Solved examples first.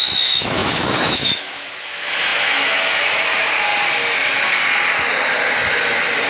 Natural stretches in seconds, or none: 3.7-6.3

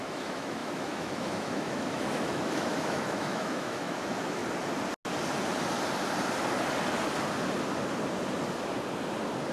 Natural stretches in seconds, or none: 4.4-9.5

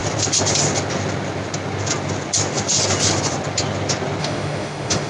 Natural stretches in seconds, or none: 0.0-4.2

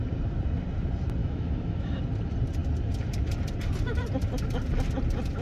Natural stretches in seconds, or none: 0.0-1.2; 2.0-5.4

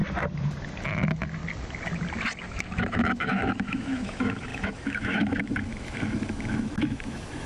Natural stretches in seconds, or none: 0.0-0.8; 1.4-2.5

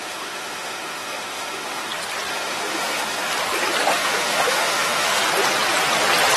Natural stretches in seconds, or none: 1.9-2.3; 3.3-3.9; 5.2-6.4